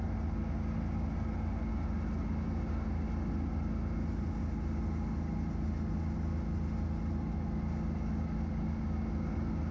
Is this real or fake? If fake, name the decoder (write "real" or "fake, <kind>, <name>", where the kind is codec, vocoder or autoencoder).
real